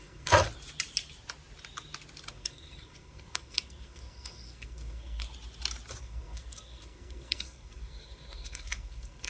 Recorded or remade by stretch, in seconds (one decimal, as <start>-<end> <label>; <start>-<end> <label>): 0.0-0.4 remade; 0.4-2.3 recorded; 2.3-5.2 remade; 5.2-6.0 recorded; 6.0-9.3 remade